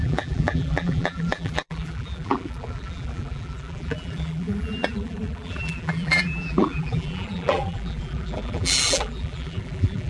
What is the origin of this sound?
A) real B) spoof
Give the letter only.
B